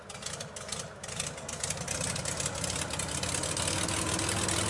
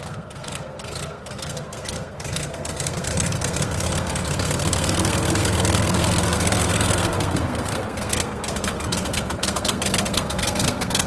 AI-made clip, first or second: second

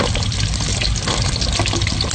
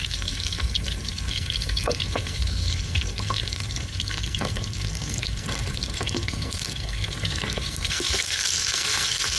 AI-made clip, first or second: second